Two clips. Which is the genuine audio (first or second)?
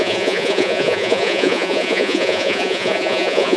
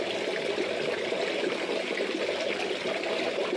second